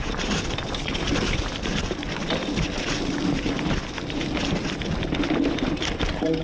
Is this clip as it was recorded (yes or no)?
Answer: yes